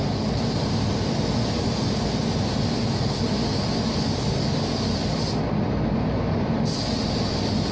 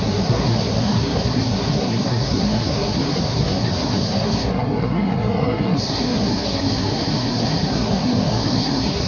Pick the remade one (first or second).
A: second